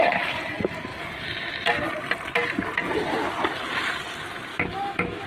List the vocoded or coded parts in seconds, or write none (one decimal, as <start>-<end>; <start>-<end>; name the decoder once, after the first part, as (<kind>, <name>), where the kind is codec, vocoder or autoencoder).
4.5-5.3 (autoencoder, DAC-VAE)